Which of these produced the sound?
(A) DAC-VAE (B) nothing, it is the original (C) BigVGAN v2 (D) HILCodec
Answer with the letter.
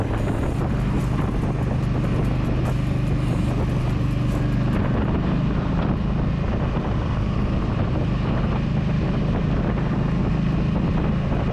B